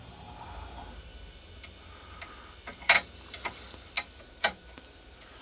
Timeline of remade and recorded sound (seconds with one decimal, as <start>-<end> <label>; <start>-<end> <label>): 0.0-1.1 remade; 1.1-4.3 recorded; 4.3-5.4 remade

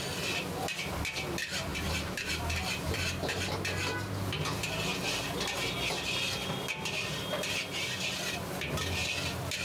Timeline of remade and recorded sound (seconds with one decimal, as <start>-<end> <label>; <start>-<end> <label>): 0.0-1.7 recorded; 1.7-3.5 remade; 3.5-9.6 recorded

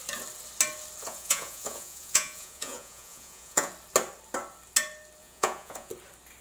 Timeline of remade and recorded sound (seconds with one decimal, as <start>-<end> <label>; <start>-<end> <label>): 0.0-1.0 recorded; 1.0-3.7 remade; 3.7-5.2 recorded; 5.2-5.9 remade; 5.9-6.4 recorded

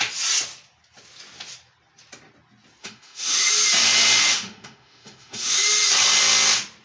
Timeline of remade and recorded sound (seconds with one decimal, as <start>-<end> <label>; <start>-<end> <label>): 0.0-2.8 recorded; 2.8-3.5 remade; 3.5-4.2 recorded; 4.2-5.6 remade; 5.6-6.8 recorded

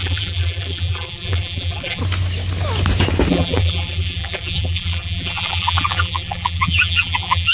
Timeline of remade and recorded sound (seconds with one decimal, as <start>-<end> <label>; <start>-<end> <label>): 0.0-2.0 remade; 2.0-3.3 recorded; 3.3-7.5 remade

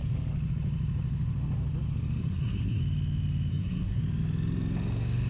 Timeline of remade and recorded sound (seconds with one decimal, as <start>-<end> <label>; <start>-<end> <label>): 0.0-2.2 recorded; 2.2-2.8 remade; 2.8-3.5 recorded; 3.5-4.0 remade; 4.0-5.3 recorded